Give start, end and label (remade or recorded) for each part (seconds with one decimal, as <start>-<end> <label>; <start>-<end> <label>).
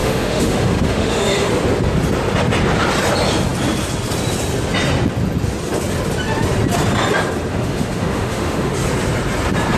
0.0-1.5 remade; 1.5-7.5 recorded; 7.5-8.7 remade; 8.7-9.8 recorded